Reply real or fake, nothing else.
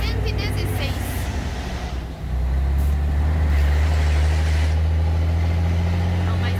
real